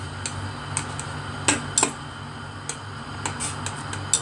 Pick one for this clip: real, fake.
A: real